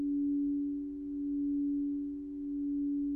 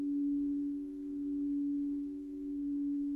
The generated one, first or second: second